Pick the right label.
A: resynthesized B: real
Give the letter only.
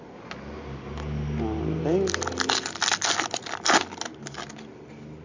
B